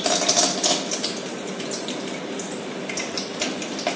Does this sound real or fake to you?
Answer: real